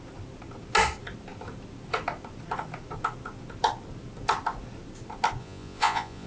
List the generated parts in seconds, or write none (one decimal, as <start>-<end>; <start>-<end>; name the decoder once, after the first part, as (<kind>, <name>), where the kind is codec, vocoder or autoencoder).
5.4-6.3 (vocoder, Vocos)